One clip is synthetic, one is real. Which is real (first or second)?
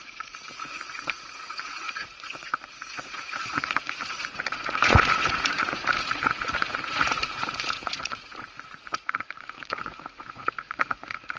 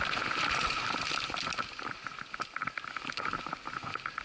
second